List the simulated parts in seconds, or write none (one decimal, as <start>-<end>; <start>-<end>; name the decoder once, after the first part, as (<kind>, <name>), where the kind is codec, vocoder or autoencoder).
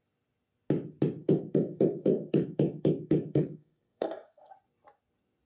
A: 1.2-4.5 (codec, SNAC)